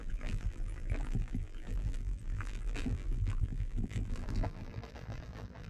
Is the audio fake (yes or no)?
yes